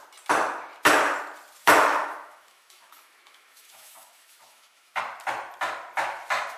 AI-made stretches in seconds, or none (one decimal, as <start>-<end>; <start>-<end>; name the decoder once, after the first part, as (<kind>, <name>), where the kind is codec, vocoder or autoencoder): 1.6-5.0 (autoencoder, DAC-VAE)